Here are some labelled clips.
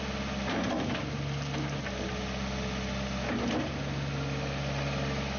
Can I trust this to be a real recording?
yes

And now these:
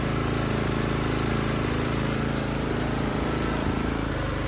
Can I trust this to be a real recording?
no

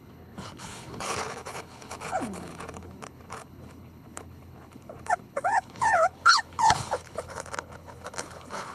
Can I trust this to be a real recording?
no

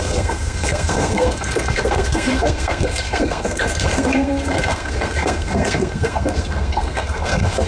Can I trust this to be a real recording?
no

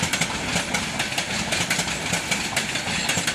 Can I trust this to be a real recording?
yes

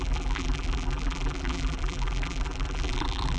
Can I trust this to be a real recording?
no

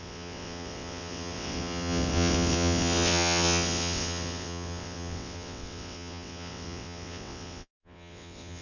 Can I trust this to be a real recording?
no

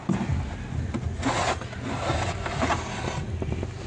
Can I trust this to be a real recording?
yes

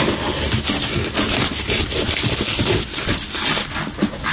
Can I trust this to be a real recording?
yes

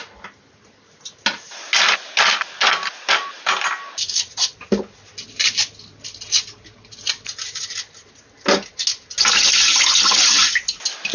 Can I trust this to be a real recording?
yes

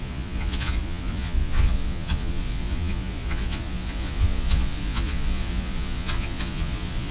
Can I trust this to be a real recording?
no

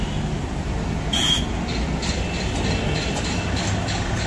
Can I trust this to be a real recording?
yes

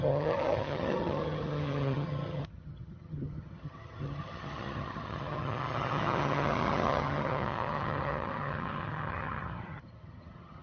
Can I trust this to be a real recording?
no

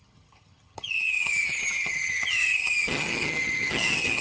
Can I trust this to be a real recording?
no